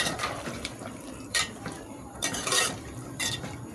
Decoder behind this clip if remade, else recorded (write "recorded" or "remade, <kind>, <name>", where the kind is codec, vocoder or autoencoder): remade, vocoder, BigVGAN v2